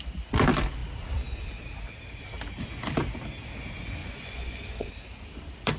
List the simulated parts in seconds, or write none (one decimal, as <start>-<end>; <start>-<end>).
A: 4.0-4.9